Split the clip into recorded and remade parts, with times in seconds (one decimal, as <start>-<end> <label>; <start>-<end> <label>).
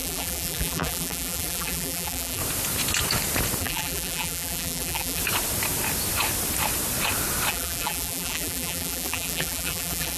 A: 0.0-2.4 remade; 2.4-3.6 recorded; 3.6-5.2 remade; 5.2-7.5 recorded; 7.5-10.2 remade